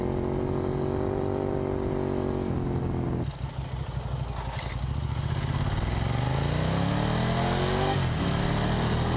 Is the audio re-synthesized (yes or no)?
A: no